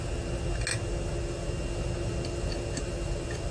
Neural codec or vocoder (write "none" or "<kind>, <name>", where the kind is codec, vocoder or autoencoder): none